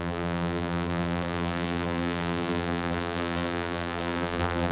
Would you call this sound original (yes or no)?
no